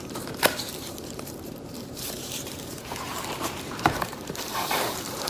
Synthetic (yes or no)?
yes